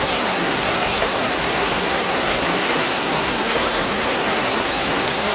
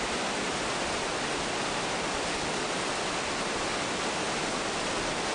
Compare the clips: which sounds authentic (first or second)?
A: second